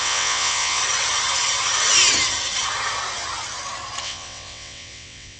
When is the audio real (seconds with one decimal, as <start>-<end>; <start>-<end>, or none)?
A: 0.8-4.0

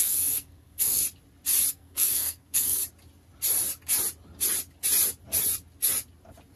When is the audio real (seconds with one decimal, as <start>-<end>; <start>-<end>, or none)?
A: 1.0-1.7; 2.8-6.6

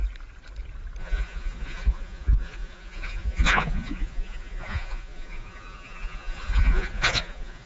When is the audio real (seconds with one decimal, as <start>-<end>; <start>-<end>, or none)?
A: 0.0-1.0

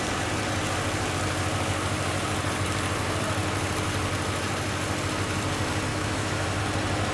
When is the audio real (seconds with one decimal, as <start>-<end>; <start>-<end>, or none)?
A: 0.0-5.9; 6.6-7.1

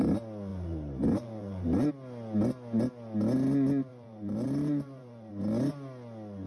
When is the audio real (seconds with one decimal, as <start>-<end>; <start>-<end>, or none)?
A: 0.0-0.5; 1.9-3.9; 5.3-6.5